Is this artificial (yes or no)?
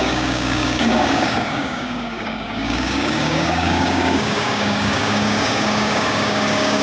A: yes